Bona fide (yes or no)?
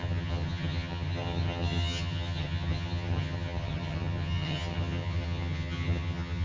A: no